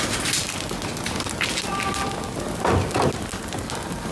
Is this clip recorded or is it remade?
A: recorded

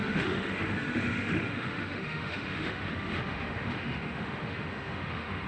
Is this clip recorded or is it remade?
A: remade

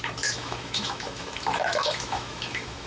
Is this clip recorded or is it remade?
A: remade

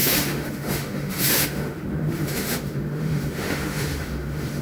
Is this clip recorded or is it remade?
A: remade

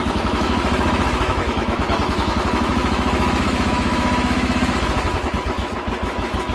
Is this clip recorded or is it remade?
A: remade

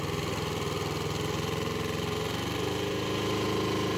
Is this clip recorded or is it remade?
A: recorded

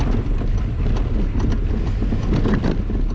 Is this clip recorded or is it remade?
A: recorded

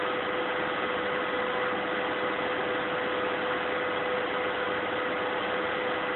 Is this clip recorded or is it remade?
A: recorded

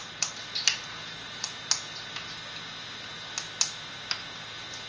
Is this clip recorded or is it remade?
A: recorded